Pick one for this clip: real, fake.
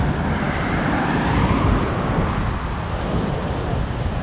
fake